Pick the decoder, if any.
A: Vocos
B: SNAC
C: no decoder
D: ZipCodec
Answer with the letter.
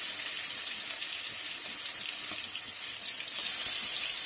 C